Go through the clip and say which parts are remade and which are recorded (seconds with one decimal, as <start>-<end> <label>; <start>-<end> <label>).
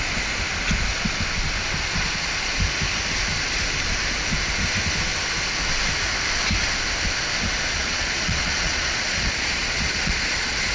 0.0-7.8 recorded; 7.8-10.7 remade